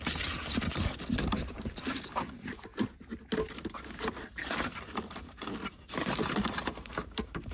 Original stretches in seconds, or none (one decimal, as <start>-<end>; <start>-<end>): 2.7-4.8